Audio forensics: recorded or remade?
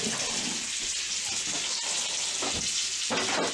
recorded